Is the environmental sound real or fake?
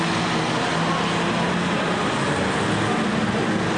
real